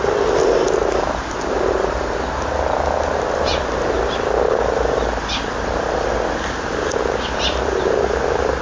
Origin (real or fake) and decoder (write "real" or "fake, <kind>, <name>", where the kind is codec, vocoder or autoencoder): real